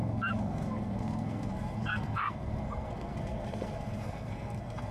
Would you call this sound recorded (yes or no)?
no